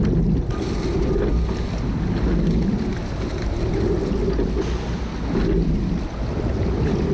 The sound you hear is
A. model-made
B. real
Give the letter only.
B